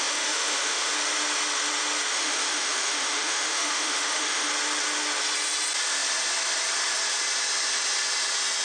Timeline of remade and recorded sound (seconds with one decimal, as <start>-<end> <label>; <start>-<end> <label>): 0.0-0.9 remade; 0.9-2.1 recorded; 2.1-4.5 remade; 4.5-8.6 recorded